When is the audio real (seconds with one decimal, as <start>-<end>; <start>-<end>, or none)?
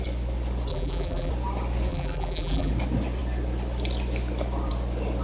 0.0-0.7; 1.3-1.9; 2.7-5.2